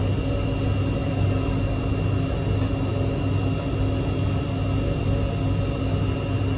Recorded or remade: recorded